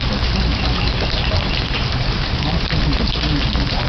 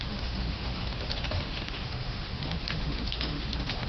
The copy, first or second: second